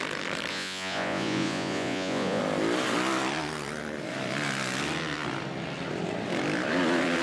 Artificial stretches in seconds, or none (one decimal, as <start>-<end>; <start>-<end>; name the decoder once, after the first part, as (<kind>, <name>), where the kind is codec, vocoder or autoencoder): 0.5-2.4 (vocoder, Vocos)